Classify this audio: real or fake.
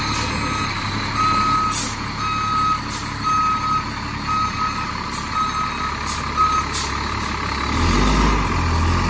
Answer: real